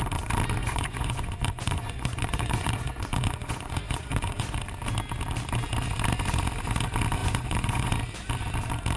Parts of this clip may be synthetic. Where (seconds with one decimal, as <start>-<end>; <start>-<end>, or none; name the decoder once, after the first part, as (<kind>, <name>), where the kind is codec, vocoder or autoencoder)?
0.6-4.6 (vocoder, Vocos); 7.2-7.9